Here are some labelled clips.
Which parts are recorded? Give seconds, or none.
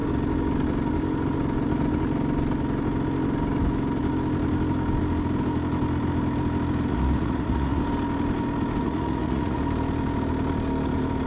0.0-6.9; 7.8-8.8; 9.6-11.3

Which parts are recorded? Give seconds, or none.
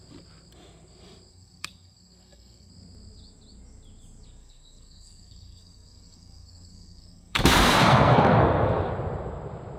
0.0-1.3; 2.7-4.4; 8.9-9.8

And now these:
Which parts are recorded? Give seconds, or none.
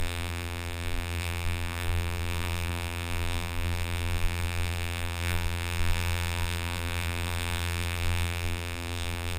none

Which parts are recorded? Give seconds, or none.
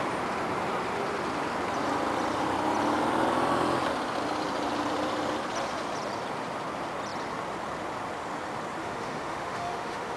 0.0-8.8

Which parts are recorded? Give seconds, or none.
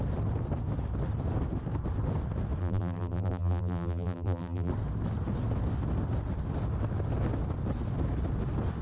0.0-2.6; 4.7-8.8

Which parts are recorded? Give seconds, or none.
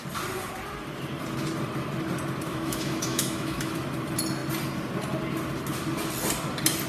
0.0-2.5; 3.7-6.9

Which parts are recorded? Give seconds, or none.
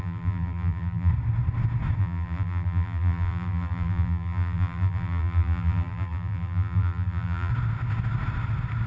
1.1-2.0; 7.5-8.9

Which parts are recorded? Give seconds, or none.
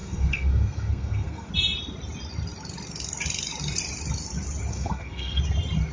1.5-4.7; 5.4-5.9